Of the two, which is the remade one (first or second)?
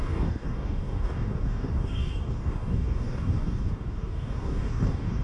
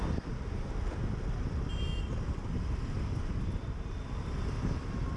first